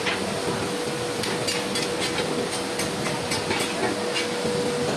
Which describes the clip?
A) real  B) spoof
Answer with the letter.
A